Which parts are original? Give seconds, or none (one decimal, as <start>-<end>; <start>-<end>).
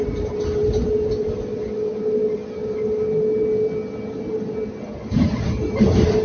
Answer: 0.0-6.2